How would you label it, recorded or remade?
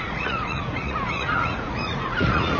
remade